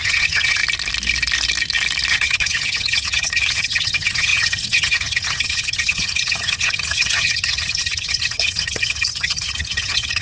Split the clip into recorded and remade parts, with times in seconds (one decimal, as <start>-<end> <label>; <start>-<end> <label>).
0.0-0.6 remade; 0.6-2.1 recorded; 2.1-10.2 remade